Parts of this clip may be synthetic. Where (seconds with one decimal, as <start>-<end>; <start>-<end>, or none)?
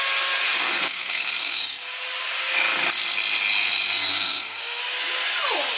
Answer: 0.5-1.6; 4.1-4.8